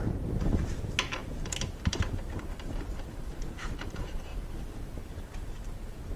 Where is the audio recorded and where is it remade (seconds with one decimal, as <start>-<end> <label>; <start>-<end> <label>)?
0.0-4.3 remade; 4.3-5.0 recorded; 5.0-6.2 remade

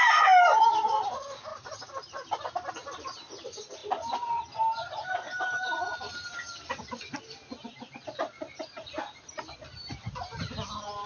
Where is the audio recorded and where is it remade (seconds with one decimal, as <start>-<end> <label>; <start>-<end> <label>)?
0.0-3.8 recorded; 3.8-7.6 remade; 7.6-11.1 recorded

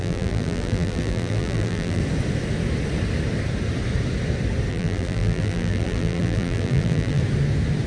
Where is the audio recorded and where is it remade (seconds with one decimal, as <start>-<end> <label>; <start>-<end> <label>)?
0.0-2.0 remade; 2.0-4.7 recorded; 4.7-7.2 remade; 7.2-7.9 recorded

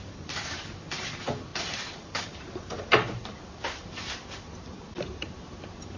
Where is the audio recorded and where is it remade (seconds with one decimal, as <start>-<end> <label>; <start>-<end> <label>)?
0.0-6.0 remade

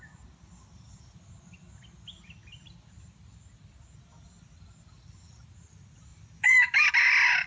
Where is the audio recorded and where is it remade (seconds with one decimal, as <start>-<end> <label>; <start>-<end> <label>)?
0.0-6.1 recorded; 6.1-6.9 remade; 6.9-7.5 recorded

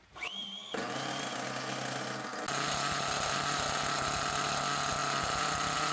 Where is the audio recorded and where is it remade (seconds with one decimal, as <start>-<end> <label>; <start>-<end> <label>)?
0.0-5.9 recorded

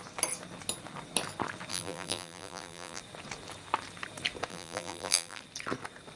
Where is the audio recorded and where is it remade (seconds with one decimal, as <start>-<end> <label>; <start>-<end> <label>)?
0.0-1.7 recorded; 1.7-3.0 remade; 3.0-4.5 recorded; 4.5-5.4 remade; 5.4-6.2 recorded

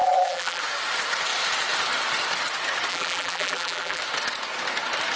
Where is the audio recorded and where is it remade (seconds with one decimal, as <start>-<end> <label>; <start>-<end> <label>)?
0.0-0.6 remade; 0.6-2.9 recorded; 2.9-4.0 remade; 4.0-5.2 recorded